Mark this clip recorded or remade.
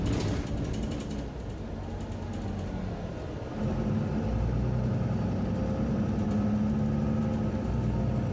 recorded